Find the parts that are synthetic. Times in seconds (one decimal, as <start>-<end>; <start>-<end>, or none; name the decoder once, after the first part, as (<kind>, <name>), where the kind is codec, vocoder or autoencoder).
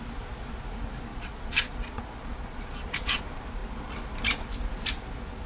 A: 1.1-3.2 (vocoder, Vocos)